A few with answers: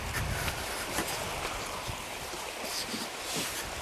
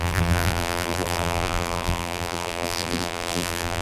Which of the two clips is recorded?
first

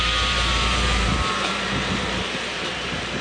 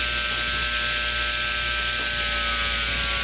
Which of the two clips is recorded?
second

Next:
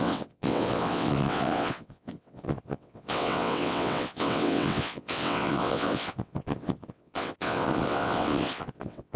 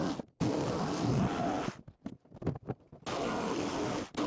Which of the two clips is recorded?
second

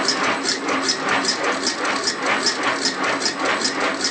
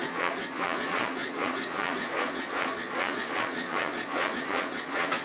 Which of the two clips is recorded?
first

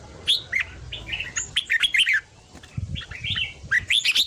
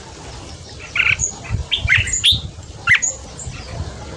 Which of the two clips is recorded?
first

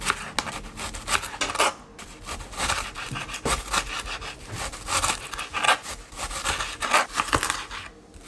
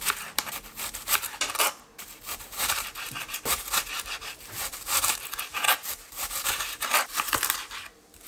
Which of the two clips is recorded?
first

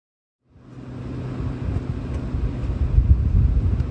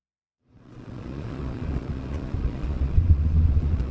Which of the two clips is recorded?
first